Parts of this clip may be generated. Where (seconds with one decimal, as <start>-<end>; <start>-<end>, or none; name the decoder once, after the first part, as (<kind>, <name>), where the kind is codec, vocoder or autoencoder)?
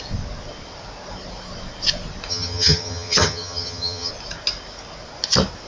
2.3-4.1 (vocoder, HiFi-GAN)